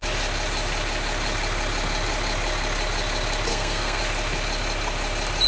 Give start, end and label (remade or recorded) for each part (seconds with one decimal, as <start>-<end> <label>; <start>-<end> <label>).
0.0-3.5 recorded; 3.5-4.0 remade; 4.0-5.5 recorded